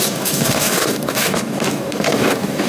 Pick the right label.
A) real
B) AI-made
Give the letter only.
B